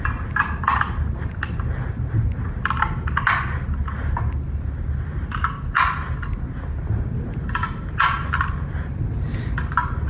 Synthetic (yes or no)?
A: no